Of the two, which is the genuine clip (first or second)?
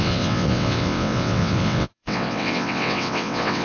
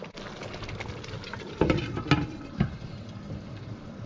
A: second